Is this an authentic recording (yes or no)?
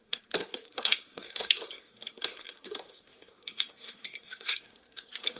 no